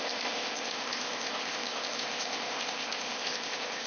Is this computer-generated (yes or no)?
yes